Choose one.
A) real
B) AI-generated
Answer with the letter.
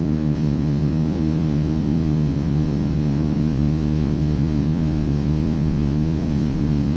B